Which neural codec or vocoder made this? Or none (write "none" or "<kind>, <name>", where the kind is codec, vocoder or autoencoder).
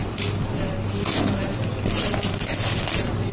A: none